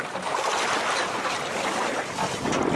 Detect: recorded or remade recorded